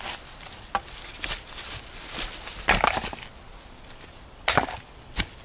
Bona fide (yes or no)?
yes